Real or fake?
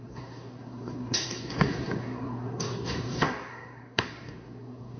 fake